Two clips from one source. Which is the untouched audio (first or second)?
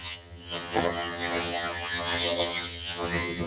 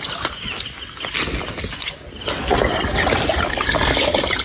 second